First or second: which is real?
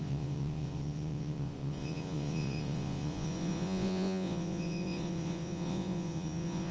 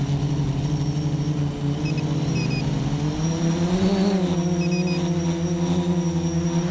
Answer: second